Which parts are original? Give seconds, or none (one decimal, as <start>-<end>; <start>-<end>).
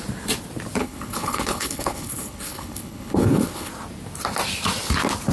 0.0-0.8; 3.7-5.3